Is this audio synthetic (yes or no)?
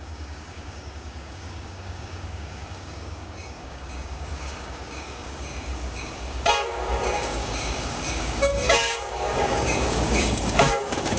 yes